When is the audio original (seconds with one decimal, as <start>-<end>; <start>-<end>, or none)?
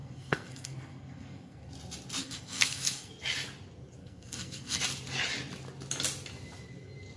1.7-2.2; 3.1-4.0; 4.8-7.2